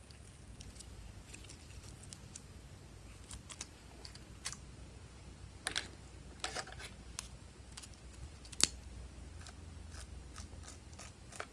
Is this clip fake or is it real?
real